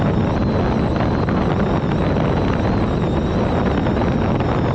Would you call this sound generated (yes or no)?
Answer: no